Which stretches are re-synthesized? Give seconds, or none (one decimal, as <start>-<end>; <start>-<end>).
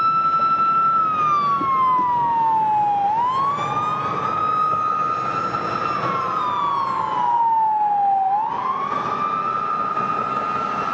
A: none